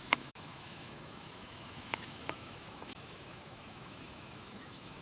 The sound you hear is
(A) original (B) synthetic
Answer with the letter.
B